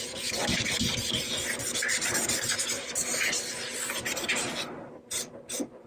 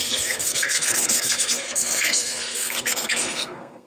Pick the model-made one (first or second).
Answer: second